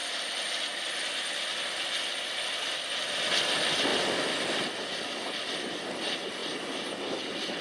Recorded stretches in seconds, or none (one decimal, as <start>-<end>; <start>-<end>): 0.0-2.5; 3.9-5.4; 6.4-7.6